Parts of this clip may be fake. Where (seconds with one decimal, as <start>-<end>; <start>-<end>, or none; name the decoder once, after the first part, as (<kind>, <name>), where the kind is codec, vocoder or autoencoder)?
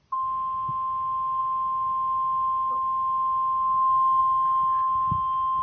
none